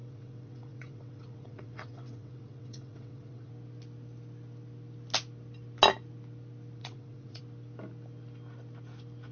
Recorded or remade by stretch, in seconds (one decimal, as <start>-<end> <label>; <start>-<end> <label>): 0.0-3.5 remade; 3.5-6.8 recorded; 6.8-7.4 remade; 7.4-9.3 recorded